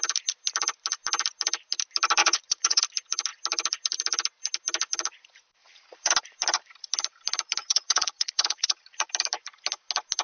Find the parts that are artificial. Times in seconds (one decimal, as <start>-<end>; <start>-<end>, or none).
2.2-2.8; 5.6-6.1; 7.6-9.1